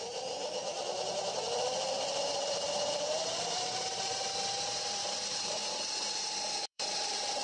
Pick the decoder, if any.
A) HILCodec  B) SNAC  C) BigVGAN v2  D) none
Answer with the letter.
C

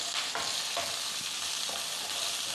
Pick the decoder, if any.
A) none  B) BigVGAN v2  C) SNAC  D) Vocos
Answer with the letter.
A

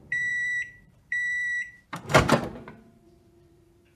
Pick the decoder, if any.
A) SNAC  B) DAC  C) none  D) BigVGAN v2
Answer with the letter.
D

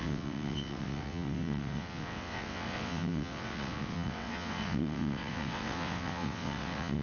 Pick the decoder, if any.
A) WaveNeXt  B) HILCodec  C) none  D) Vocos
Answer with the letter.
A